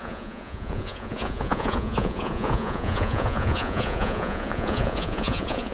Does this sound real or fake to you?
fake